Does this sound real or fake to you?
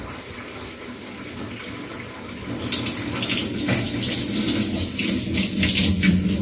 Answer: real